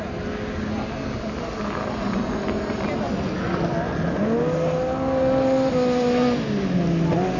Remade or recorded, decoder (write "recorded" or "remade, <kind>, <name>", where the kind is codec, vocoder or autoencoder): recorded